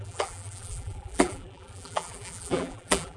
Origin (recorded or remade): remade